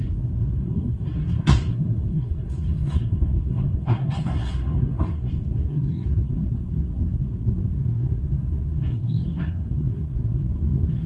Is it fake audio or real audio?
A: fake